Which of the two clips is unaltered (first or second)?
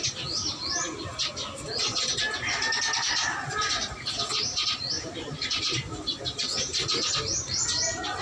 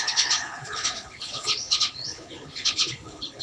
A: first